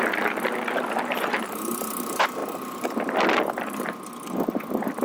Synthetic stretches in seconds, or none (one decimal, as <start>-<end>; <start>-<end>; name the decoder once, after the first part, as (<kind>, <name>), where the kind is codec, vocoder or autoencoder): none